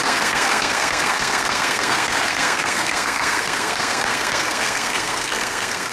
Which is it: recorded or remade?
remade